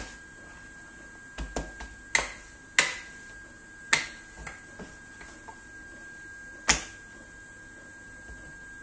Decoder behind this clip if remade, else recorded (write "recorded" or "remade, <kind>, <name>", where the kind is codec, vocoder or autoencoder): recorded